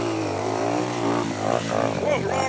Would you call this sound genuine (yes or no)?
no